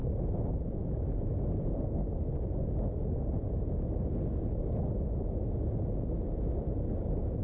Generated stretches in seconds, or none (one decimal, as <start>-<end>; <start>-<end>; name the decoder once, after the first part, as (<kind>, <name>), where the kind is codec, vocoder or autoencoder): none